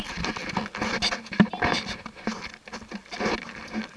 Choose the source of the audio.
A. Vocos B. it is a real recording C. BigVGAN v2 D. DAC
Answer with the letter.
B